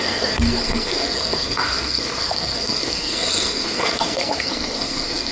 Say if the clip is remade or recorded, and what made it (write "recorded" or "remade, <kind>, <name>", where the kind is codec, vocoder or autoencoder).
remade, codec, SNAC